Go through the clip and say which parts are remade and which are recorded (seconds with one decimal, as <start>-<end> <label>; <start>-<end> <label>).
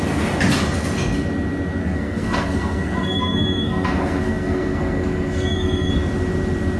0.0-1.8 recorded; 1.8-5.9 remade; 5.9-6.8 recorded